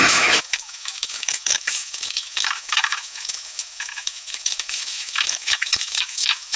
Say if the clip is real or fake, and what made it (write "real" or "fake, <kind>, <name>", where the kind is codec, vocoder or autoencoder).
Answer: fake, autoencoder, DAC-VAE